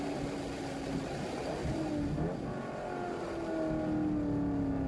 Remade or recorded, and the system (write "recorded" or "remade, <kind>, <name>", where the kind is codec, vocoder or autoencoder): recorded